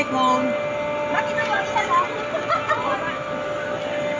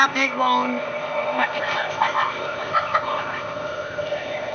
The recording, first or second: first